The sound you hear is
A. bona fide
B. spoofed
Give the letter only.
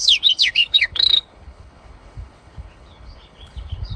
B